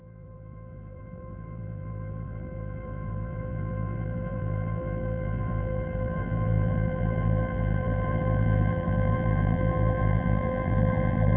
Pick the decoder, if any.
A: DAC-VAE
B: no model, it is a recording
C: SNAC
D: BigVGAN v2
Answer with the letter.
D